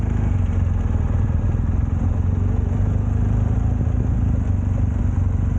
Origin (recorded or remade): recorded